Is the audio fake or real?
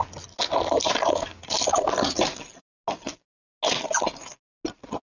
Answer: real